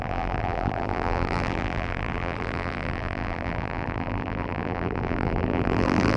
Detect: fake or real fake